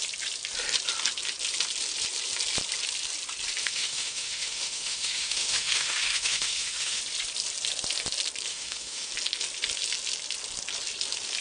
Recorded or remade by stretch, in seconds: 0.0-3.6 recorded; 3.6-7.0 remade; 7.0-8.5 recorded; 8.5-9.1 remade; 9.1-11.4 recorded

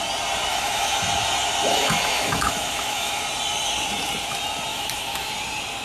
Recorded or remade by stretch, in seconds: 0.0-0.5 recorded; 0.5-1.0 remade; 1.0-1.7 recorded; 1.7-3.2 remade; 3.2-4.7 recorded; 4.7-5.3 remade; 5.3-5.8 recorded

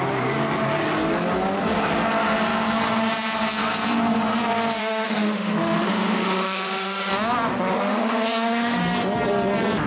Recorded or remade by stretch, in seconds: 0.0-4.8 recorded; 4.8-7.1 remade; 7.1-7.7 recorded; 7.7-8.8 remade; 8.8-9.9 recorded